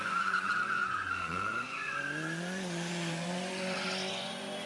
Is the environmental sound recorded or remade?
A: remade